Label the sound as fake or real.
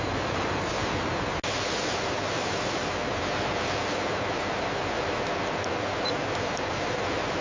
real